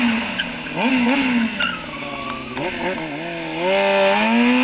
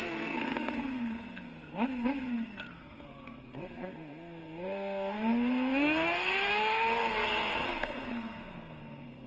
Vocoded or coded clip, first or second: second